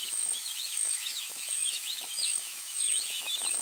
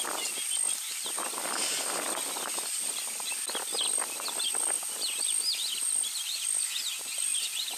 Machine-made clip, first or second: first